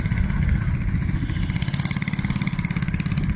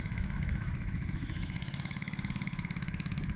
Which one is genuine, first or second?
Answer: first